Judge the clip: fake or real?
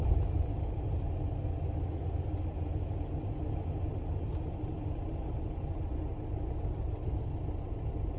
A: real